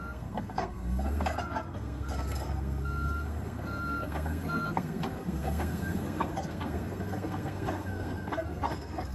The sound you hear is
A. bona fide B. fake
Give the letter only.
B